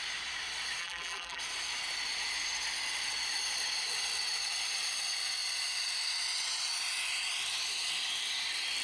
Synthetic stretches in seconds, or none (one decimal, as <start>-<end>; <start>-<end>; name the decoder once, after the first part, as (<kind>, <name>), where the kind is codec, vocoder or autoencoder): 0.8-1.4 (vocoder, BigVGAN v2)